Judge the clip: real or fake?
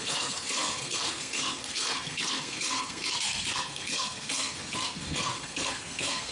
fake